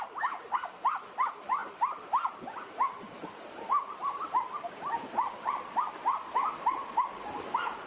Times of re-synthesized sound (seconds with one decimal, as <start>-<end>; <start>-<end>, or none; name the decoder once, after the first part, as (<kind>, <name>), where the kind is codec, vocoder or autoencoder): none